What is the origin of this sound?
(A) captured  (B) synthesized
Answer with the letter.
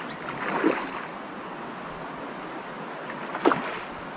A